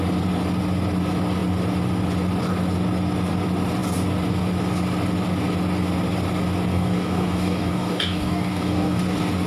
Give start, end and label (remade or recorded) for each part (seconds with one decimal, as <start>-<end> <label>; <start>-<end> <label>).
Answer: 0.0-6.7 recorded; 6.7-9.0 remade; 9.0-9.5 recorded